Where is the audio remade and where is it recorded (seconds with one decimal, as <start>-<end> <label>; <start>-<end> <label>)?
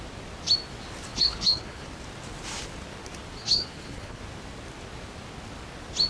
0.0-1.1 recorded; 1.1-1.9 remade; 1.9-3.4 recorded; 3.4-4.2 remade; 4.2-6.1 recorded